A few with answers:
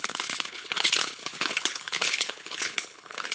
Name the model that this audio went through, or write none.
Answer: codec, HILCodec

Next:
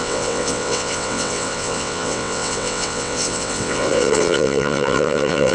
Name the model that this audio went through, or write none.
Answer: vocoder, WaveNeXt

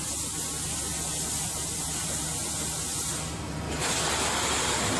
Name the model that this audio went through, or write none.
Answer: none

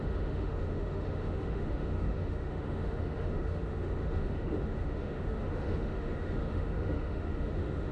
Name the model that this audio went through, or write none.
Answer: autoencoder, DAC-VAE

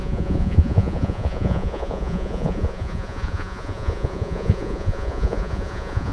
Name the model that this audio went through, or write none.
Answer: vocoder, Vocos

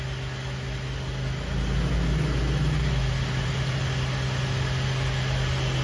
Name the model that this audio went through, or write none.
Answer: none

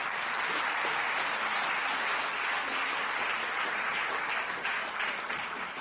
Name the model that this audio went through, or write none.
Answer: none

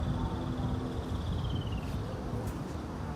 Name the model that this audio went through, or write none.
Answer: none